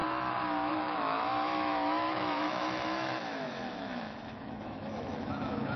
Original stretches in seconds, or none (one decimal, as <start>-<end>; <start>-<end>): 0.0-0.7